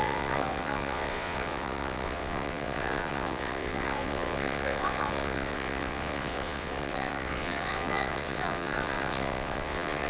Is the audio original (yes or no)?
no